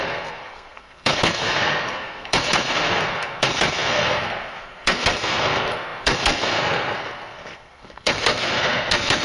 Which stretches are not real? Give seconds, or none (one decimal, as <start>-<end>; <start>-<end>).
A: 0.0-9.2